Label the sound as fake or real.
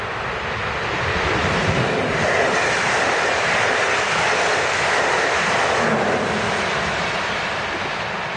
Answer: real